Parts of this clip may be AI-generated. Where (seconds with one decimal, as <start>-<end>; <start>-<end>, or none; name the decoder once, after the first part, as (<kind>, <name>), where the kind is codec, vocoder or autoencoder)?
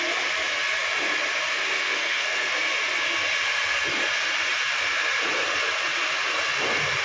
1.8-2.5 (codec, SNAC)